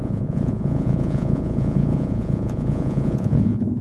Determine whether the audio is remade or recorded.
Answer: remade